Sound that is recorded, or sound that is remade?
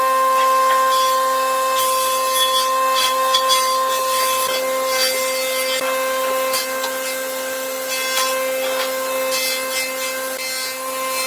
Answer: recorded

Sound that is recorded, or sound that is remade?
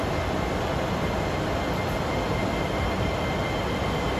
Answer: recorded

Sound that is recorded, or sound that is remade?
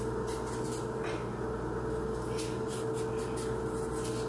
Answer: recorded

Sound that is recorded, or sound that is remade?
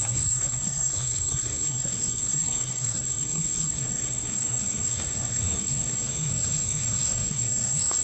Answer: remade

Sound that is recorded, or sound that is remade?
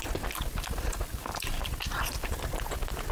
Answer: recorded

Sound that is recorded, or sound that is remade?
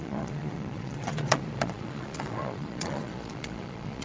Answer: remade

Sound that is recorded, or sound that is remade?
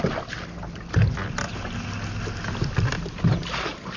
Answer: recorded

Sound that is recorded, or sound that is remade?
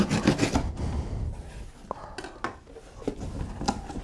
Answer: recorded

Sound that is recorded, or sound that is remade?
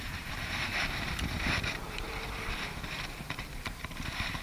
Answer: remade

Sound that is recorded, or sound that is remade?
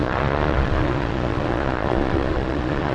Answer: remade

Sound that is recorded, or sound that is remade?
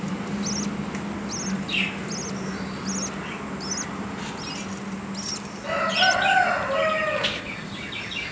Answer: recorded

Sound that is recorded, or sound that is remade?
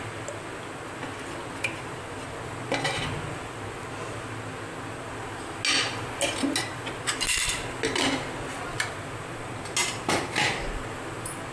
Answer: recorded